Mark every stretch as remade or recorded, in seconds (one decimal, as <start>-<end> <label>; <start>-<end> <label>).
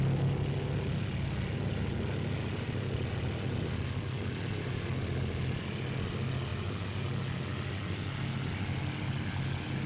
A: 0.0-9.9 recorded